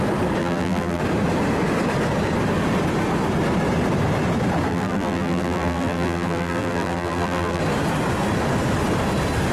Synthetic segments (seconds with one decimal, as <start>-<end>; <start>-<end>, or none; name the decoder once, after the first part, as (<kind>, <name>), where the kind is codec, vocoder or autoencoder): 0.4-1.0 (vocoder, BigVGAN v2); 4.7-7.6